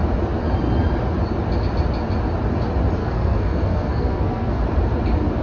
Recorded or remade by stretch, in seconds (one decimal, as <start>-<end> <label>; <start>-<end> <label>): 0.0-3.0 recorded; 3.0-4.6 remade; 4.6-5.4 recorded